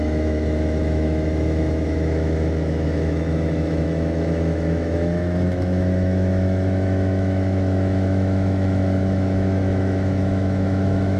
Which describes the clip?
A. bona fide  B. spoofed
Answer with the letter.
B